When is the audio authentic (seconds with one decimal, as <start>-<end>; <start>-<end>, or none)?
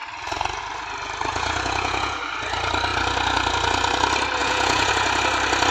0.0-1.3; 2.2-4.4; 4.9-5.7